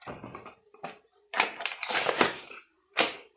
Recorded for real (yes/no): no